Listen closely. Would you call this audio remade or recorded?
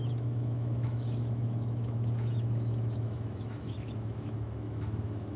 remade